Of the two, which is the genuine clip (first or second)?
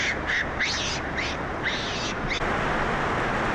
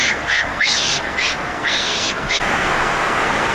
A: first